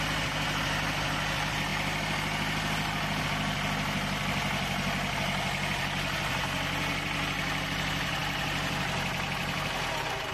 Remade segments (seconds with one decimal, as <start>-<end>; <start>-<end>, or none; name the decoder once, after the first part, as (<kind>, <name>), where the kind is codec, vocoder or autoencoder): none